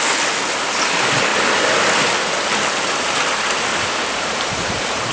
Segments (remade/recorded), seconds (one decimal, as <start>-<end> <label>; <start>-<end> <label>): 0.0-3.7 recorded; 3.7-5.1 remade